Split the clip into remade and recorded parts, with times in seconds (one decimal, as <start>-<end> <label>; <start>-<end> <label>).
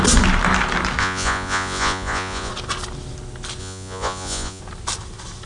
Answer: 0.0-1.0 recorded; 1.0-2.5 remade; 2.5-3.6 recorded; 3.6-4.6 remade; 4.6-5.5 recorded